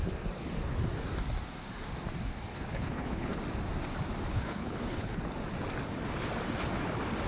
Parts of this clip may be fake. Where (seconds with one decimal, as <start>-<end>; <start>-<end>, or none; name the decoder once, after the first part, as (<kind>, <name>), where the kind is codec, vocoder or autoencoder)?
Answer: 2.5-3.4 (codec, HILCodec); 4.3-5.2